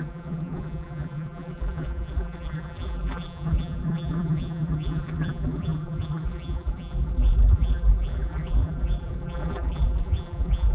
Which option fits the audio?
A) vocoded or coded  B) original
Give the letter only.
A